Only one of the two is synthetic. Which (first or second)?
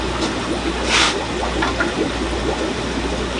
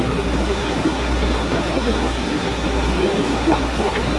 second